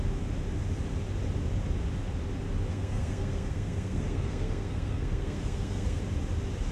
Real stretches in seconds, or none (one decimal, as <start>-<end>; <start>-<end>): 0.0-2.7; 6.0-6.7